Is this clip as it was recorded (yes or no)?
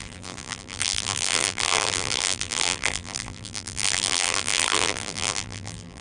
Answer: no